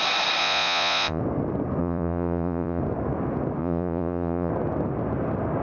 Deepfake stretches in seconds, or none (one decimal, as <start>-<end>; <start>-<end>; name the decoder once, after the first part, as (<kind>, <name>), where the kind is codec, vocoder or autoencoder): 0.4-1.2 (vocoder, Vocos); 1.8-2.8; 3.6-4.5